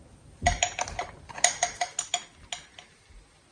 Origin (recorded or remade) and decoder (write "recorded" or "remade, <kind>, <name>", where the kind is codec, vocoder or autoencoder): recorded